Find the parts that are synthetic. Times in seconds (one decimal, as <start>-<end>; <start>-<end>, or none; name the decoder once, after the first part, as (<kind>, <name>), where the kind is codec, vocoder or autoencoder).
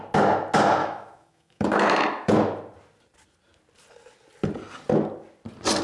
0.8-2.3 (autoencoder, DAC-VAE)